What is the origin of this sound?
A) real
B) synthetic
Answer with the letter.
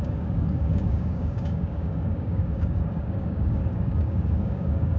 B